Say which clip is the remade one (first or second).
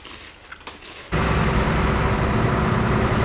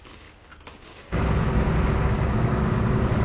second